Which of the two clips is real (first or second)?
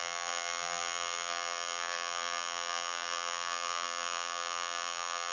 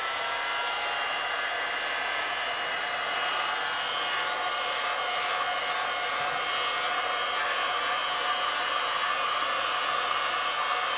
second